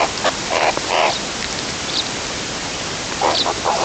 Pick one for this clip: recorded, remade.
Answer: remade